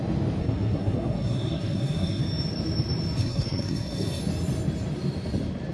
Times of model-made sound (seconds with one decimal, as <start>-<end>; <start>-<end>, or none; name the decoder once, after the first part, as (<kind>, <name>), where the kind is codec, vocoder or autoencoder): 0.4-2.2 (codec, SNAC); 3.2-4.2